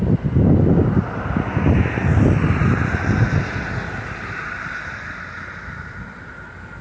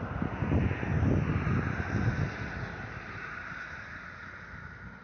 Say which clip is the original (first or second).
second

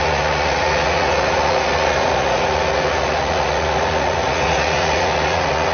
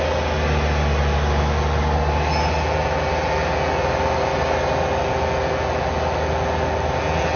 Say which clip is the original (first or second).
second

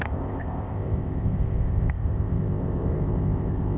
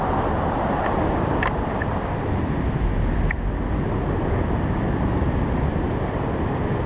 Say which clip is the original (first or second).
second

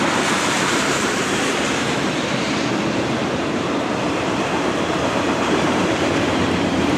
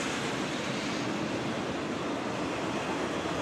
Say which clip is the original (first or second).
second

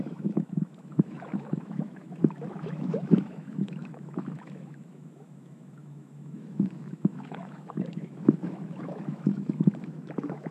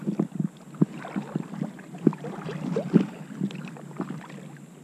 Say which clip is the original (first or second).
second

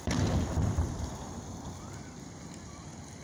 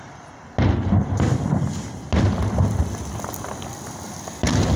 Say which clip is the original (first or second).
second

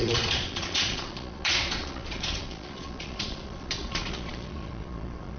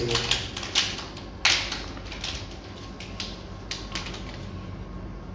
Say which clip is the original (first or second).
second